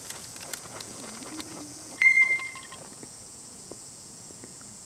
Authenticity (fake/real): fake